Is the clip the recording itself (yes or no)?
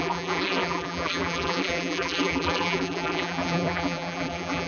no